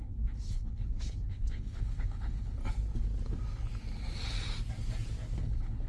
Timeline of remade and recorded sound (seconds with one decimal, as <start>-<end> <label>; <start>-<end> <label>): 0.0-2.6 remade; 2.6-5.4 recorded; 5.4-5.9 remade